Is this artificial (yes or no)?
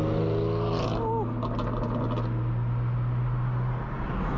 no